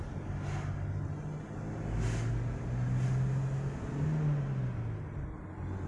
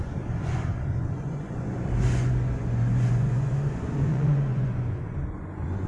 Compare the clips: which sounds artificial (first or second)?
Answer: second